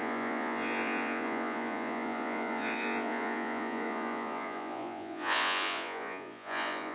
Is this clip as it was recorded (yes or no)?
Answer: no